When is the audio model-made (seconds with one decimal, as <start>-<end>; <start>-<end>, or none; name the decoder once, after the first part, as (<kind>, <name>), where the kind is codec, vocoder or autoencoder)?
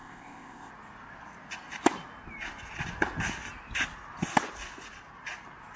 0.0-0.7 (codec, ZipCodec)